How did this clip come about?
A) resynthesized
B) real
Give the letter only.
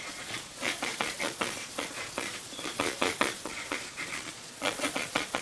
A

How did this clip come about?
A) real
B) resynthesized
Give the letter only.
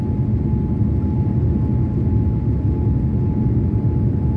A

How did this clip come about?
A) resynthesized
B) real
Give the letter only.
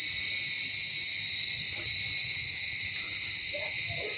B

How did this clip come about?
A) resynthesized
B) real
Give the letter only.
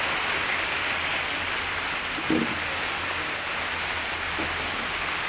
B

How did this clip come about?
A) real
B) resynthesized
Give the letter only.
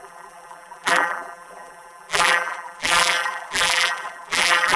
B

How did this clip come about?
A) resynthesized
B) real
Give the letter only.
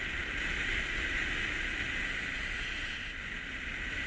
B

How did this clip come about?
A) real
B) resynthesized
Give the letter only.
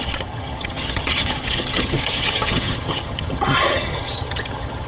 B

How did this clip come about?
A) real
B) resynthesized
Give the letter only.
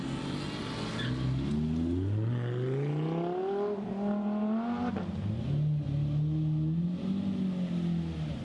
A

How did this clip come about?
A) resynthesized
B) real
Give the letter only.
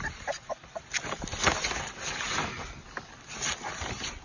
B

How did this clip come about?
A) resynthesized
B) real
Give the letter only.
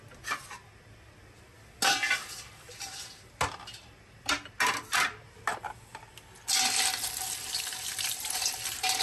B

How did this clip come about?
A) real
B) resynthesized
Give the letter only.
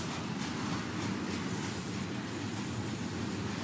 A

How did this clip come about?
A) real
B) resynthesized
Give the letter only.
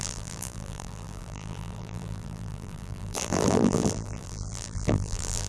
B